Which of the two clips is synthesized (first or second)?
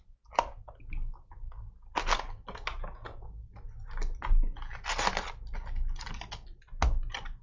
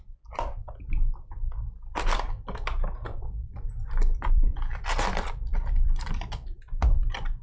second